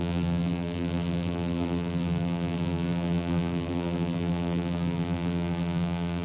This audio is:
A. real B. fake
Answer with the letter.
B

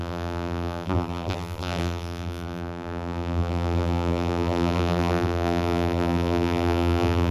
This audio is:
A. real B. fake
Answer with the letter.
B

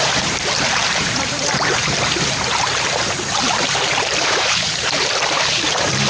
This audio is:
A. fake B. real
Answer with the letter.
A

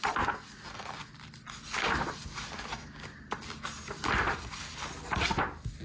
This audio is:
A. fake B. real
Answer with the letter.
B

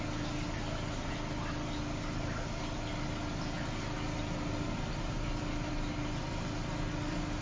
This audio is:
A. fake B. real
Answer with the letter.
B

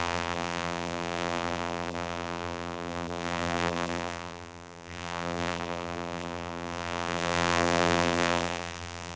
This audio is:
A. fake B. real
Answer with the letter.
A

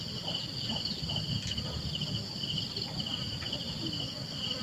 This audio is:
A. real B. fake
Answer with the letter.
A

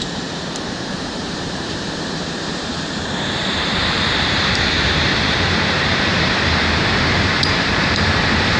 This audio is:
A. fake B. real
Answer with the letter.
A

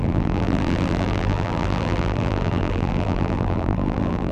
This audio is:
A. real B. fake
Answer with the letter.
B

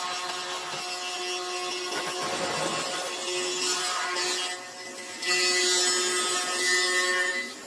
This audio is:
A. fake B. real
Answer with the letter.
B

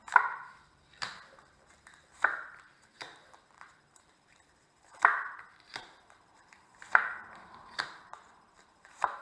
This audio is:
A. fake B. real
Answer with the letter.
A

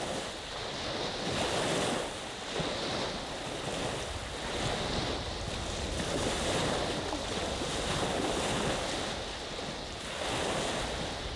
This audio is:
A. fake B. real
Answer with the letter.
B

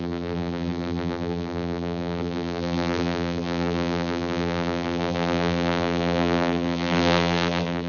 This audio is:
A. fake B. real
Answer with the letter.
A